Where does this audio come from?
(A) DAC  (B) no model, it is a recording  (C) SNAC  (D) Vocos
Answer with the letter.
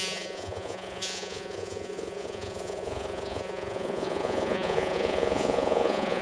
D